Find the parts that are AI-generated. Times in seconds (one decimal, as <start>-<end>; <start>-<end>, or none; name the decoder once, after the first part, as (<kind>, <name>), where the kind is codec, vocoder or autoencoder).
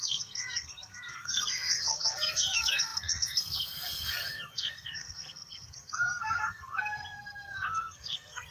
0.0-8.5 (codec, SNAC)